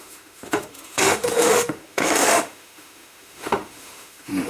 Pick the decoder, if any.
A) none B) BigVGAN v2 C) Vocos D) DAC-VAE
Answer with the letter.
D